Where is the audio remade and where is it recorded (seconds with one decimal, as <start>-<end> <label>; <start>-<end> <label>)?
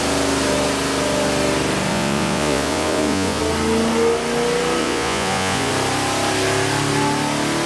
0.0-1.9 recorded; 1.9-3.4 remade; 3.4-4.8 recorded; 4.8-5.7 remade; 5.7-7.7 recorded